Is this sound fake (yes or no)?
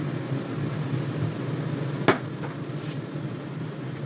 no